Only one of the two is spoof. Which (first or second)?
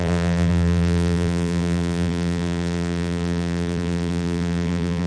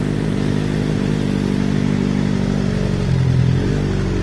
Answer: first